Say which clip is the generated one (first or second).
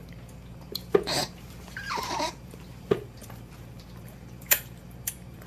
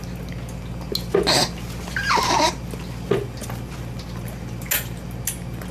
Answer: first